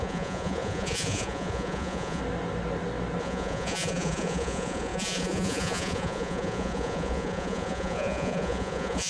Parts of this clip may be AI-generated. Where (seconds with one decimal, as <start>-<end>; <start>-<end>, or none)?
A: 0.0-2.2; 3.2-9.1